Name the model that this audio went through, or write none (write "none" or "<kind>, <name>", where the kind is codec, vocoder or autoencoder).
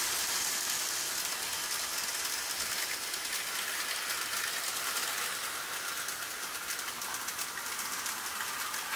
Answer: none